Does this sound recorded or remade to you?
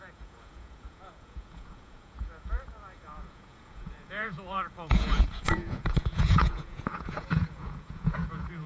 remade